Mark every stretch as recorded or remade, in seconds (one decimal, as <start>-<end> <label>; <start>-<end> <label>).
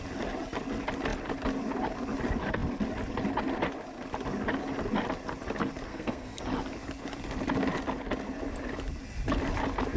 0.0-5.9 recorded; 5.9-6.4 remade; 6.4-10.0 recorded